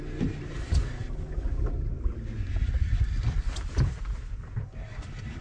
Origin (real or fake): real